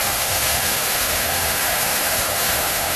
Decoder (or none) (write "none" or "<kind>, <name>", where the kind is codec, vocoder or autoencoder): autoencoder, DAC-VAE